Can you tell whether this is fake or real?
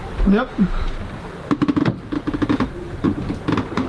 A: real